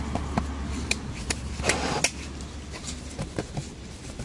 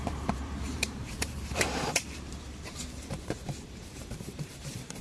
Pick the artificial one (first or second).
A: second